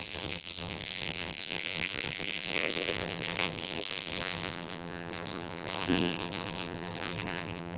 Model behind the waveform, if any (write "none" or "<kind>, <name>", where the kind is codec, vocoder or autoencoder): vocoder, BigVGAN v2